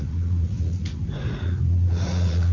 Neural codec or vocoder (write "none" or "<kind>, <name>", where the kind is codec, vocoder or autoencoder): vocoder, Vocos